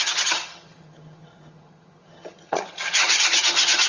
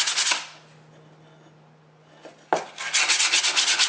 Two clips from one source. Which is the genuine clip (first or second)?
second